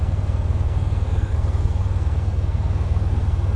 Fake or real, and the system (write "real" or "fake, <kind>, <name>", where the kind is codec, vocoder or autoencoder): fake, codec, SNAC